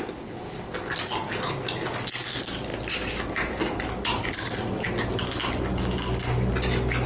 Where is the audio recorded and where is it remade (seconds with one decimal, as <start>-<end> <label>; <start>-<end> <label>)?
0.0-7.1 recorded